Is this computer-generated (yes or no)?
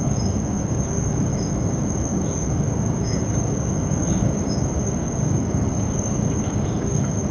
yes